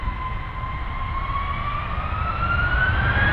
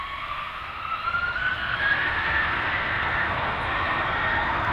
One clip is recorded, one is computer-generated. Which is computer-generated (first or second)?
second